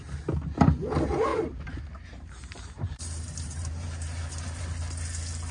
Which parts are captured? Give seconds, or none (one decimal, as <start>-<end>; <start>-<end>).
0.0-1.3; 4.6-5.5